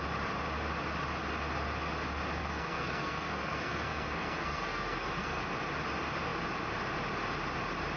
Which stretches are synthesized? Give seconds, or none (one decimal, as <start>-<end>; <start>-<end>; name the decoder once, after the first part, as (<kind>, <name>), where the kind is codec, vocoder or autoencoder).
2.4-5.4 (codec, SNAC)